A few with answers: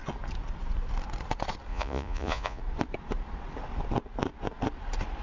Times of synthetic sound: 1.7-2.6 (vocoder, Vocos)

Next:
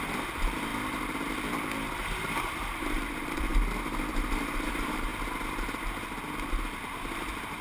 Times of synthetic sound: 0.0-0.7 (vocoder, BigVGAN v2); 2.7-3.5; 4.1-5.1; 6.5-7.6

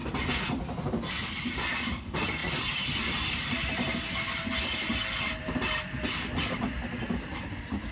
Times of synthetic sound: 2.4-4.0 (vocoder, BigVGAN v2)

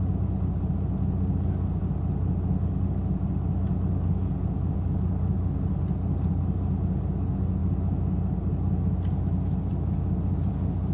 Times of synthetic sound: none